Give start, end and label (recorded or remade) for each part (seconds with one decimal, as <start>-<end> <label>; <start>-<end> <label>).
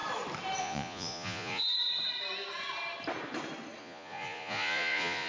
0.0-0.6 recorded; 0.6-1.6 remade; 1.6-3.8 recorded; 3.8-5.3 remade